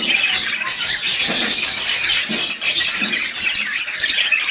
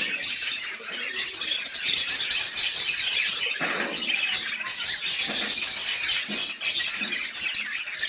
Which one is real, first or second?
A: second